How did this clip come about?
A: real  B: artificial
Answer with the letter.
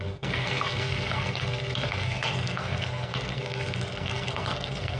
B